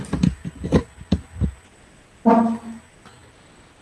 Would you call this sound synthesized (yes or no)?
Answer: no